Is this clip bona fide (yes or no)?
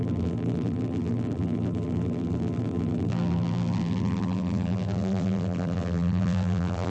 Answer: no